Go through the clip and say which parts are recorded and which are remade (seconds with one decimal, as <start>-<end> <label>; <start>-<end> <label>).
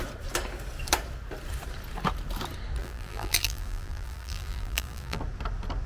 0.0-2.8 recorded; 2.8-5.2 remade; 5.2-5.9 recorded